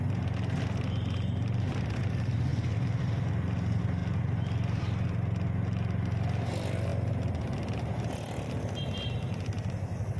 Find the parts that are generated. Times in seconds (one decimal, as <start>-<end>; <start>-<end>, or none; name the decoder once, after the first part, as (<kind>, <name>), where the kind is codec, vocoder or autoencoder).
none